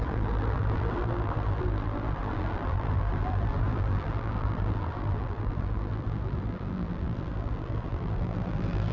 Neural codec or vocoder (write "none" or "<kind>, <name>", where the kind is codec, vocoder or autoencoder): vocoder, BigVGAN v2